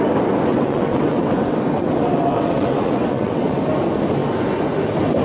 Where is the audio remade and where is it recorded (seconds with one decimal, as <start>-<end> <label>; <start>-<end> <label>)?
0.0-0.5 recorded; 0.5-3.6 remade; 3.6-5.2 recorded